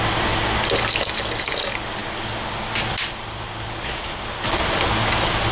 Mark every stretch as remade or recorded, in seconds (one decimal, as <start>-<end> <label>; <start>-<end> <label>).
0.0-5.5 recorded